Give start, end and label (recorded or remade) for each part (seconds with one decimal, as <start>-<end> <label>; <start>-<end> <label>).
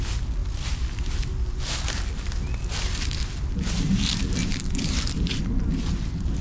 0.0-4.4 recorded; 4.4-5.4 remade; 5.4-6.4 recorded